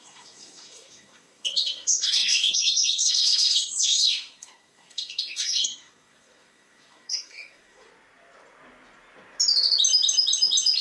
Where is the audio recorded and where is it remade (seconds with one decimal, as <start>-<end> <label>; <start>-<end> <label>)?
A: 0.0-7.9 remade; 7.9-10.8 recorded